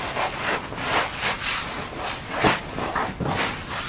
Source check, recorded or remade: recorded